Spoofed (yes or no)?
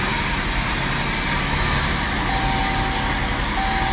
no